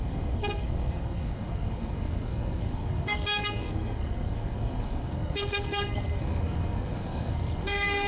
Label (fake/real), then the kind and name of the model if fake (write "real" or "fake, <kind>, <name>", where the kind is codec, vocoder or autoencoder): fake, codec, SNAC